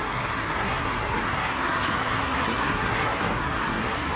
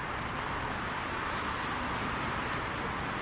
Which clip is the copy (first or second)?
first